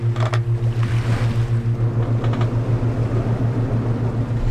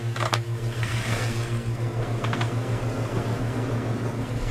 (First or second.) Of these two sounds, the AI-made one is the second